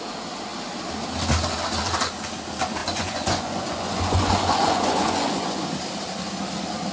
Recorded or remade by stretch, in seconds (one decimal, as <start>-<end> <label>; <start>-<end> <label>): 0.0-2.8 recorded; 2.8-5.7 remade; 5.7-6.9 recorded